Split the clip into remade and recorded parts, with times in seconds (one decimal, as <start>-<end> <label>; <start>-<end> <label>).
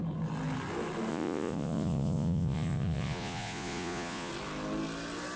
0.0-1.1 recorded; 1.1-4.3 remade; 4.3-5.4 recorded